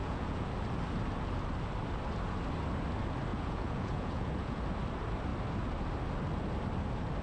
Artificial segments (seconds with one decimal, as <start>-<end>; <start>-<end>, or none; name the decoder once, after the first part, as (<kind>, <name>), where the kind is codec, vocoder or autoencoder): 0.0-0.5 (vocoder, Vocos); 3.3-4.6